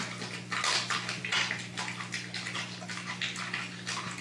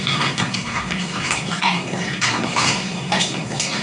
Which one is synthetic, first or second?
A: second